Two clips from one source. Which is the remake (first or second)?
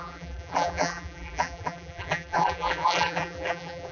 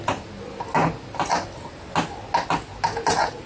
first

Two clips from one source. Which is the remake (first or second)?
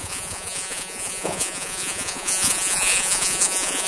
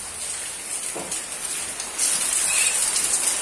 first